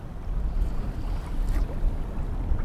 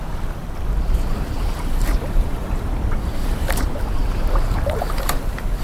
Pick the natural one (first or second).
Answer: first